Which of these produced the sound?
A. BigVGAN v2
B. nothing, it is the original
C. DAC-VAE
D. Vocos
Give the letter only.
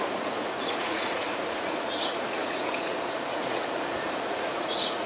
D